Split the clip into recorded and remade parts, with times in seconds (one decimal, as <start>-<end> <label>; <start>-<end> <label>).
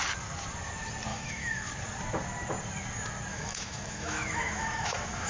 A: 0.0-1.1 recorded; 1.1-1.7 remade; 1.7-3.3 recorded; 3.3-5.3 remade